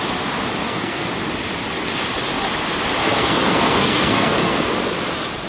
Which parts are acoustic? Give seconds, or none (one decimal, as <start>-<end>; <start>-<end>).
0.0-0.6; 1.1-3.0; 4.7-5.5